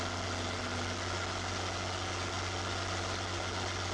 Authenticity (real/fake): real